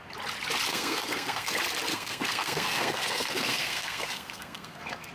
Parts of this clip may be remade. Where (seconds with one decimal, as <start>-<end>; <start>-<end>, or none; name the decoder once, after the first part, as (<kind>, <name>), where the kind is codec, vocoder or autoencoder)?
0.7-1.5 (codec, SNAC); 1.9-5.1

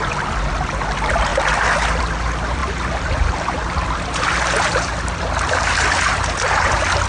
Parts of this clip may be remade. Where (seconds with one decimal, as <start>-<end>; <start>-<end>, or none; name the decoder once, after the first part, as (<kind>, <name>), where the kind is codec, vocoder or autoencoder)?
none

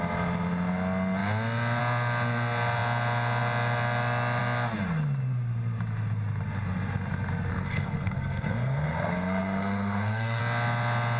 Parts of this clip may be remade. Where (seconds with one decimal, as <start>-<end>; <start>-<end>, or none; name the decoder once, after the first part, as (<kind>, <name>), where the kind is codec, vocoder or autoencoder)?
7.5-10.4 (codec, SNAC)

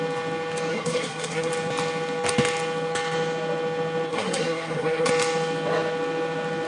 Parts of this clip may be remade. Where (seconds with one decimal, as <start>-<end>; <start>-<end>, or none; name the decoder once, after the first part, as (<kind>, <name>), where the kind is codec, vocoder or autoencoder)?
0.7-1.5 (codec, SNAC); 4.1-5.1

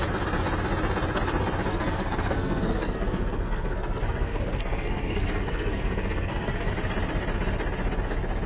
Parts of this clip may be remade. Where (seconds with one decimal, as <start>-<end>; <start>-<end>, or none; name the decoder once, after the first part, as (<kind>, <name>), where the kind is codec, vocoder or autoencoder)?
1.7-6.7 (codec, SNAC)

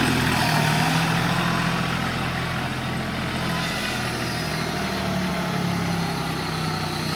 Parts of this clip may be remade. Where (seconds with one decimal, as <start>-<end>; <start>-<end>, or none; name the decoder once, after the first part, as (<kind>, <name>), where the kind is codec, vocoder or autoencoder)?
none